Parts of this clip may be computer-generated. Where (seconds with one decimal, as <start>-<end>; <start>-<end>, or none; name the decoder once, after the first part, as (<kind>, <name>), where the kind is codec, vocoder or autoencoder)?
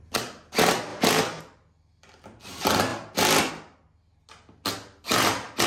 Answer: none